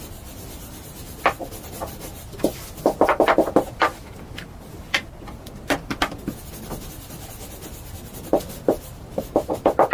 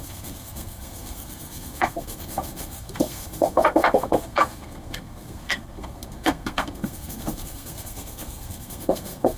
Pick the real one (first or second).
first